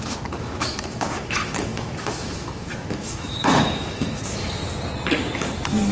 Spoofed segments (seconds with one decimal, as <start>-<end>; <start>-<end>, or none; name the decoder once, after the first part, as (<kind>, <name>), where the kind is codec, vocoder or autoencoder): 0.0-4.6 (autoencoder, DAC-VAE)